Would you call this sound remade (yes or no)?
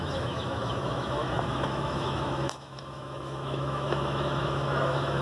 yes